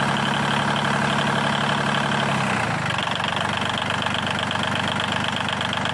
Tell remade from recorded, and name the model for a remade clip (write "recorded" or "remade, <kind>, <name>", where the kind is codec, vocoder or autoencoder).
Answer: recorded